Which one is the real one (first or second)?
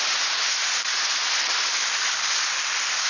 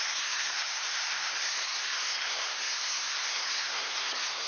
first